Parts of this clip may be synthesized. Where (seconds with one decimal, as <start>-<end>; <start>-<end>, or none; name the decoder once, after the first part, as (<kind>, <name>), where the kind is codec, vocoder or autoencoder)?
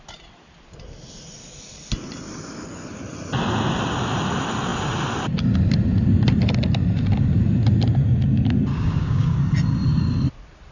8.7-9.4 (codec, DAC)